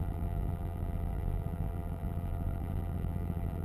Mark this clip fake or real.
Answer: fake